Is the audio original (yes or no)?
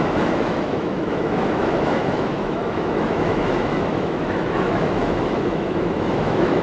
no